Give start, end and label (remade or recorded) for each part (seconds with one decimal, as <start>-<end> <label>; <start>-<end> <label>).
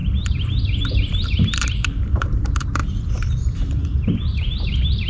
0.0-5.1 remade